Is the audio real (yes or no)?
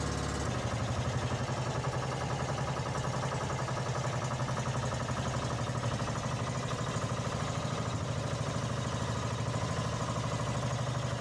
yes